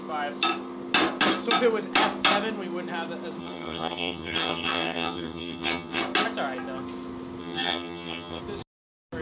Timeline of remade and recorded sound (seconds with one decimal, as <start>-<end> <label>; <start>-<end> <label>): 0.0-3.4 recorded; 3.4-6.0 remade; 6.0-7.4 recorded; 7.4-8.4 remade; 8.4-9.2 recorded